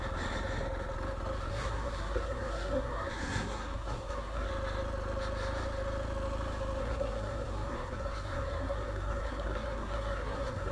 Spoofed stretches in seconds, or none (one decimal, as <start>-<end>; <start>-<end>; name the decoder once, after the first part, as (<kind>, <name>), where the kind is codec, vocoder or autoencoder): 1.5-4.5 (codec, SNAC); 6.8-10.7